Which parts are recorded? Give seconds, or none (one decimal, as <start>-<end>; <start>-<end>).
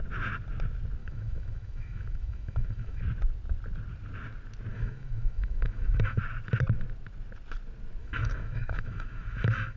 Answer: 0.0-1.0; 3.0-4.7; 6.2-8.0